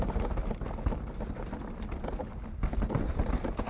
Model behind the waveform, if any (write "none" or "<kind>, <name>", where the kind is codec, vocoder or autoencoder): none